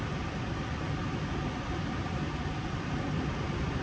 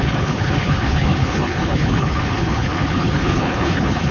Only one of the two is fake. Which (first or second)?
second